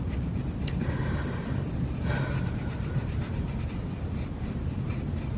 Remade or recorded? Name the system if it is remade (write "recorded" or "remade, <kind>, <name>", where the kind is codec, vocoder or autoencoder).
recorded